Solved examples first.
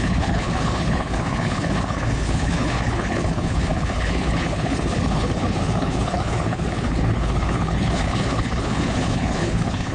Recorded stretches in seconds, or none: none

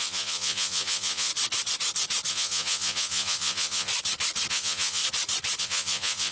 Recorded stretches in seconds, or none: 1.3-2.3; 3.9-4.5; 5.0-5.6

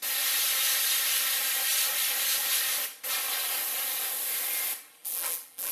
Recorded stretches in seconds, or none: 0.0-5.0

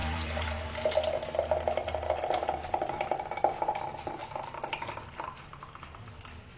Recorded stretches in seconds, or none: 0.7-2.4; 3.0-4.2; 6.1-6.6

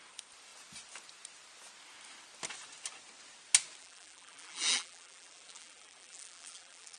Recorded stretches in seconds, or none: 0.0-3.8

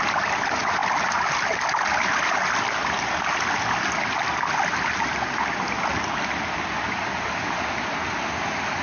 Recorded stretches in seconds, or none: 0.0-8.8